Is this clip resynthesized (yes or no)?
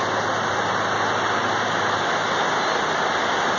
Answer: no